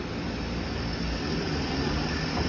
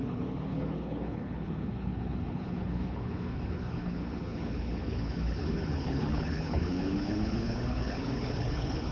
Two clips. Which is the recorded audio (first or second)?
first